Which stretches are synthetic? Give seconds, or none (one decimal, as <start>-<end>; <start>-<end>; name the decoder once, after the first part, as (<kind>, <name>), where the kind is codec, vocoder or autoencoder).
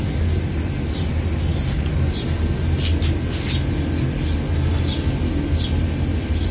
none